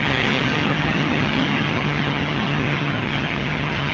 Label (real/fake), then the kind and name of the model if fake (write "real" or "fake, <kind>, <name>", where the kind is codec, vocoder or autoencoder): fake, vocoder, HiFi-GAN